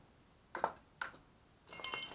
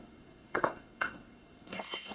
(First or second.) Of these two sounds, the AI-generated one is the second